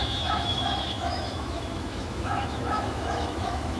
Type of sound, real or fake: fake